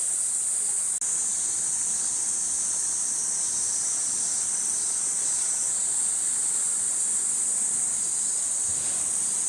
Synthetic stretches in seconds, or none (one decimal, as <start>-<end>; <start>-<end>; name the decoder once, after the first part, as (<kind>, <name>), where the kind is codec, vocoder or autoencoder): none